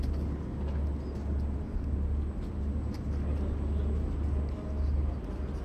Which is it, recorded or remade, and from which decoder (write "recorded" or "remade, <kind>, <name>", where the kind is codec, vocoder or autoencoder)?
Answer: recorded